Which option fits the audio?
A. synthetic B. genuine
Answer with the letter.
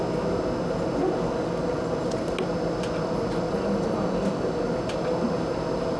B